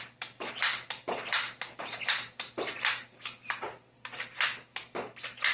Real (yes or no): yes